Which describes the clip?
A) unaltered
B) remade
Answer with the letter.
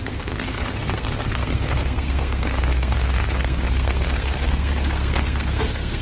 B